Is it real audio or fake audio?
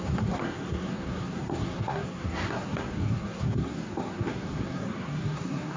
fake